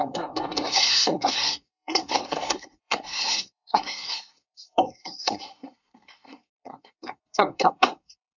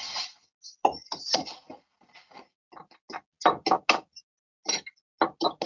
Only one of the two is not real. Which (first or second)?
first